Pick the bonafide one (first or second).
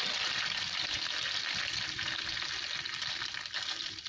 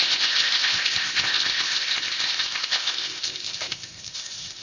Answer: first